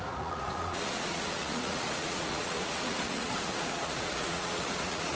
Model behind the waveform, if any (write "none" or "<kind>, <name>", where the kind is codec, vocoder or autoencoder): vocoder, Vocos